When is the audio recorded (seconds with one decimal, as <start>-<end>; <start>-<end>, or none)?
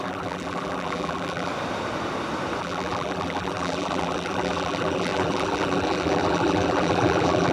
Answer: 1.5-2.6